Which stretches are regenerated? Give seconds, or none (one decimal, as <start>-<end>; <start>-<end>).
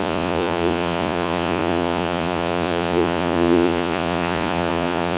0.0-5.2